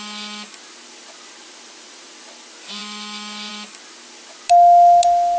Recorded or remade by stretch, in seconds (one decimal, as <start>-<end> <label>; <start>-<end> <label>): 0.0-5.4 recorded